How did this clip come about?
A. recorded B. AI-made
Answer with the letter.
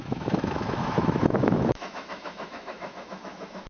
B